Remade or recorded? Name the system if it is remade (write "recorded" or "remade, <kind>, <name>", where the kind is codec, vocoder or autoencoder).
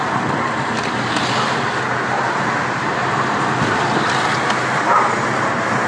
recorded